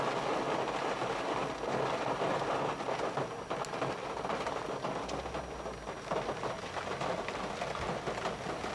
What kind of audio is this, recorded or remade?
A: recorded